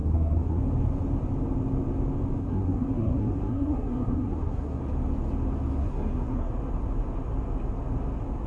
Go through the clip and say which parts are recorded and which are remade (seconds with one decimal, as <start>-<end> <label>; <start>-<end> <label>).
0.0-0.6 remade; 0.6-2.4 recorded; 2.4-4.8 remade; 4.8-5.8 recorded; 5.8-6.5 remade; 6.5-8.5 recorded